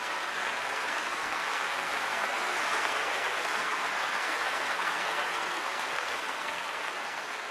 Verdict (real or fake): fake